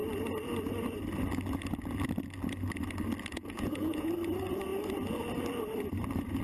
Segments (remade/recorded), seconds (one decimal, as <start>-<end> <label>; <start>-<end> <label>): 0.0-3.3 recorded; 3.3-4.1 remade; 4.1-6.4 recorded